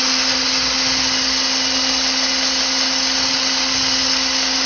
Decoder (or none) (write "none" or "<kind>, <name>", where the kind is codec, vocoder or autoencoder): none